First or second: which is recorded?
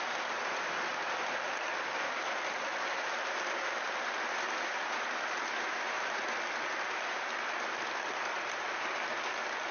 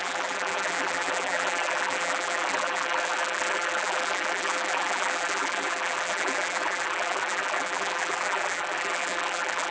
first